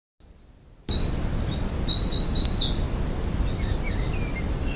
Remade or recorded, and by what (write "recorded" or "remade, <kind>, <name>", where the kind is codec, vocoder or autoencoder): recorded